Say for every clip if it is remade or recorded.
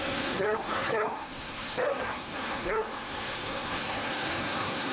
remade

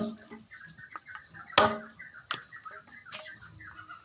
recorded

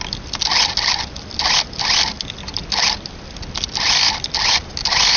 recorded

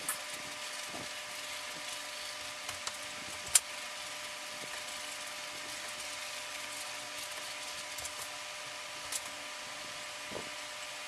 recorded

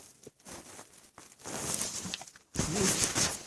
recorded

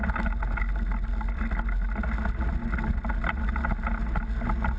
recorded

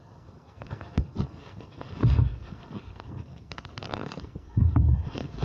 remade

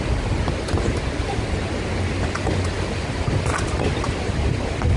recorded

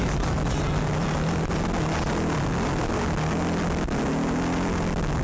recorded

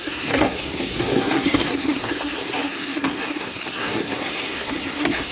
remade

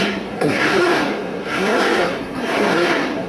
remade